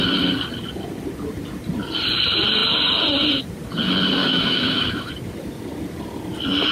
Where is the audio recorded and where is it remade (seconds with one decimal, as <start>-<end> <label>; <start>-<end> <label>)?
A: 0.0-4.2 recorded; 4.2-5.1 remade; 5.1-6.7 recorded